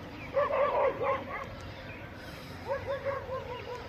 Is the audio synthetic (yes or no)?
no